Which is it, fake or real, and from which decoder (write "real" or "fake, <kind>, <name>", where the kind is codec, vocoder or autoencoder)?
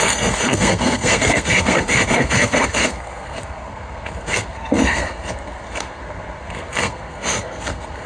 fake, codec, SNAC